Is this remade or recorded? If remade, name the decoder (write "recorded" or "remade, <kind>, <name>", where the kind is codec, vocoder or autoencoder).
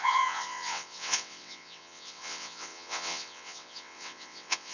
remade, vocoder, WaveNeXt